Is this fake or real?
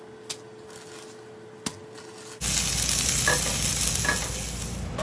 real